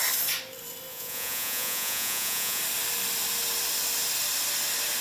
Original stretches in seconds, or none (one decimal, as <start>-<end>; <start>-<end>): 0.0-0.9; 2.6-5.0

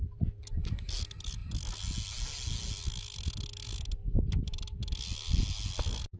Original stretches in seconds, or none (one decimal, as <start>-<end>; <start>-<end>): 0.0-6.2